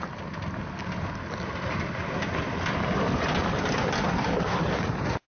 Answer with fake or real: real